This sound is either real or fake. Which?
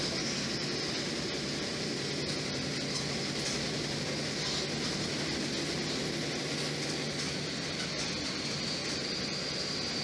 real